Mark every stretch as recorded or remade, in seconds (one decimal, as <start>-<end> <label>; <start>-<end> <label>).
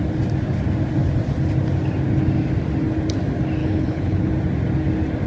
0.0-3.6 recorded; 3.6-4.3 remade; 4.3-5.3 recorded